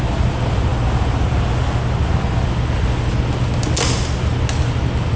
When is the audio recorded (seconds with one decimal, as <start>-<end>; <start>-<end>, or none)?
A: 0.0-5.2

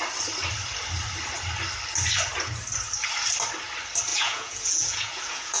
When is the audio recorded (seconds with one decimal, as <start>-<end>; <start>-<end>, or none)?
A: 0.0-4.1

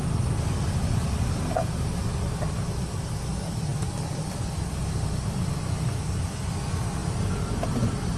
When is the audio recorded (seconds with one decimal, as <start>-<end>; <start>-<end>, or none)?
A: 0.0-8.2